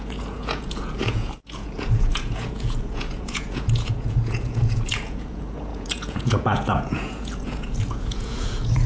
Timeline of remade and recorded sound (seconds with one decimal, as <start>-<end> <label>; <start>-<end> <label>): 0.0-8.9 remade